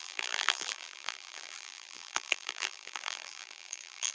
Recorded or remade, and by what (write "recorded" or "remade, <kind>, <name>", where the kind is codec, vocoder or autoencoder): remade, vocoder, BigVGAN v2